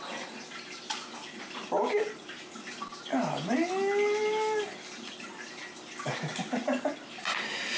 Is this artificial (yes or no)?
no